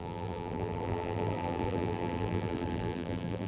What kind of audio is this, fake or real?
fake